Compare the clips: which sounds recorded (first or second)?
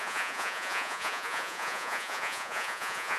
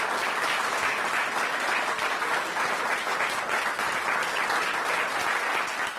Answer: second